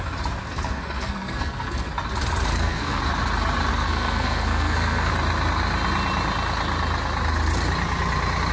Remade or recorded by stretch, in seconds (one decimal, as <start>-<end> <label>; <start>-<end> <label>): 0.0-0.4 recorded; 0.4-1.9 remade; 1.9-2.5 recorded; 2.5-3.0 remade; 3.0-3.7 recorded; 3.7-5.1 remade; 5.1-8.5 recorded